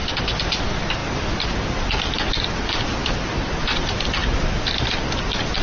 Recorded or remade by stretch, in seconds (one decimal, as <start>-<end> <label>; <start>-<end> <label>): 0.0-5.6 recorded